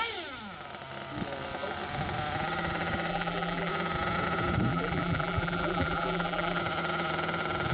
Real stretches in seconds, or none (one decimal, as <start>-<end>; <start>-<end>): 0.0-3.1; 3.7-4.7; 6.6-7.7